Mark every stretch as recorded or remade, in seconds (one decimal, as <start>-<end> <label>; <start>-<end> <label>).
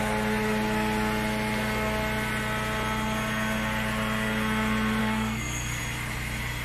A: 0.0-5.0 recorded; 5.0-5.8 remade; 5.8-6.6 recorded